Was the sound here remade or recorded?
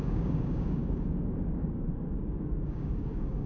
remade